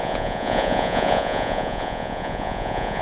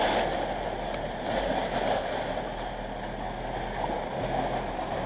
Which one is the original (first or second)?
second